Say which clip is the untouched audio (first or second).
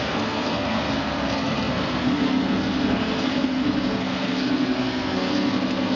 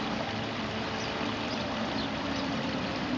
second